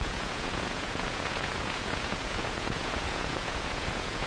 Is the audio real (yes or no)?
no